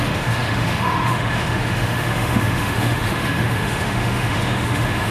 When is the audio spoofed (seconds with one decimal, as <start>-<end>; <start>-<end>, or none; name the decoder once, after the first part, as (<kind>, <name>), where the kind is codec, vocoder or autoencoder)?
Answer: 0.0-5.1 (autoencoder, DAC-VAE)